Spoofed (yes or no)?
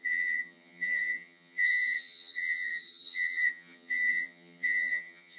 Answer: yes